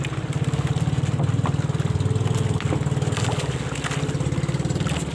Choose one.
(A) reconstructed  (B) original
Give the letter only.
B